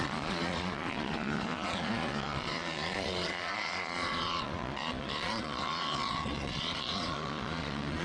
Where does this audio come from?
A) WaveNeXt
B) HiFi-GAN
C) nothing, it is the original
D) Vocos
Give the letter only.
D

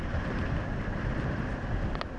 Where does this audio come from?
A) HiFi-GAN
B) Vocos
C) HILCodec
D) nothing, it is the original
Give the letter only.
D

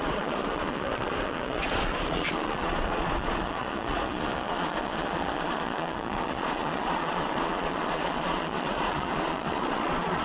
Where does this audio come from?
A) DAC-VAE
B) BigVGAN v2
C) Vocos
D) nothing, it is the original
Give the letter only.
C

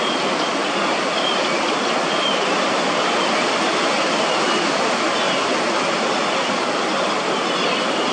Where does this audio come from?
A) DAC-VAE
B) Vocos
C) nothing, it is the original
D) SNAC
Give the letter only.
C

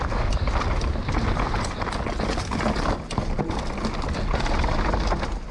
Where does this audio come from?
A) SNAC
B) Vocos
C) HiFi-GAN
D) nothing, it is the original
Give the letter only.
D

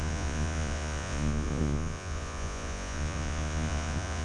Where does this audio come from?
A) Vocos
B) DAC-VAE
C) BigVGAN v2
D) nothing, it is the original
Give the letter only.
A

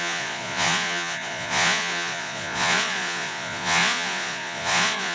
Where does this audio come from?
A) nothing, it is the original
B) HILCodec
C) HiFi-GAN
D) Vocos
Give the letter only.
D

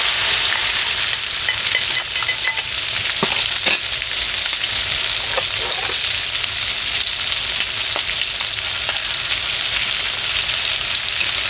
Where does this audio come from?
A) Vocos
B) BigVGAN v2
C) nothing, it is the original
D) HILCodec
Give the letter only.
C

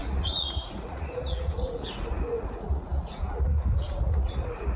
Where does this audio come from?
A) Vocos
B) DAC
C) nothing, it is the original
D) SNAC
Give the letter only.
A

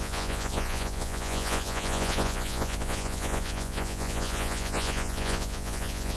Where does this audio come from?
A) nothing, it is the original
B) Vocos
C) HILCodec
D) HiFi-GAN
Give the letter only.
B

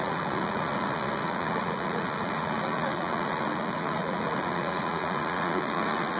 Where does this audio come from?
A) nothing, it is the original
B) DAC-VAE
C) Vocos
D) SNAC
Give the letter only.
C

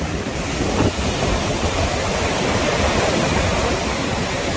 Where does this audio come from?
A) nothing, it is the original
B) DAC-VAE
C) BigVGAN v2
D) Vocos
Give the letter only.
A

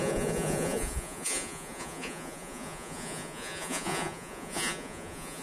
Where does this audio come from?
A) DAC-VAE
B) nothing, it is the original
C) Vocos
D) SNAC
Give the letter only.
C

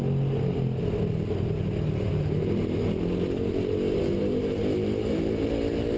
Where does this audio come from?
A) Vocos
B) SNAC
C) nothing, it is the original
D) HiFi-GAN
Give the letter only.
C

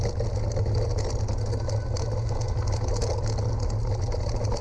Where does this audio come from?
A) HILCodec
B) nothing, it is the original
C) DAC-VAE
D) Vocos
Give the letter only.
B